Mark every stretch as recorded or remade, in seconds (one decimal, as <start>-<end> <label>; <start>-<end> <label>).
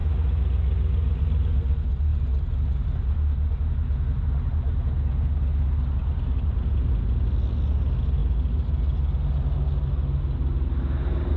0.0-11.4 recorded